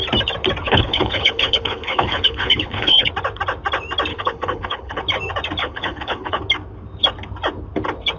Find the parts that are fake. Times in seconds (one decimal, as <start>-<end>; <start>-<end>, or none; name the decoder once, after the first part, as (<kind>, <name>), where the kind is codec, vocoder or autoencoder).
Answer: 0.6-3.1 (codec, HILCodec); 4.1-5.0; 5.6-6.4